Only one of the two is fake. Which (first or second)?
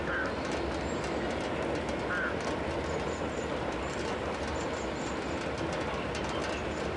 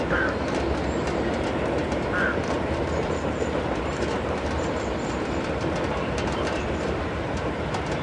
second